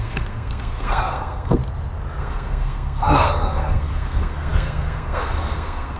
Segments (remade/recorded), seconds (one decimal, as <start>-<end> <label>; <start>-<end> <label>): 0.0-1.6 remade; 1.6-2.2 recorded; 2.2-6.0 remade